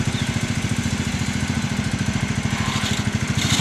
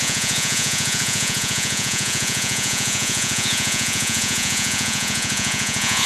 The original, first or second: first